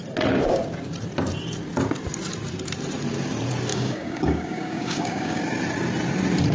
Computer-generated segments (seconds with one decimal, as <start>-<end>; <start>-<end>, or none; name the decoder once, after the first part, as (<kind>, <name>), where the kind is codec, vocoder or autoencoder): 3.7-5.4 (codec, DAC)